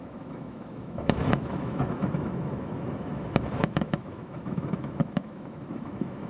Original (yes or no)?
no